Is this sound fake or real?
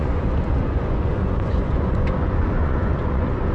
fake